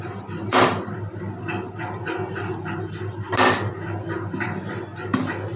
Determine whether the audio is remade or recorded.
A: recorded